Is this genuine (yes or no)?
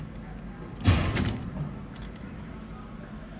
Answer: yes